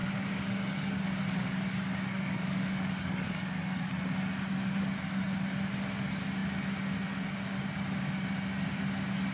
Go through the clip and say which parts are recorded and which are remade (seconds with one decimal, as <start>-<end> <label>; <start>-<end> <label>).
0.0-3.9 remade; 3.9-9.3 recorded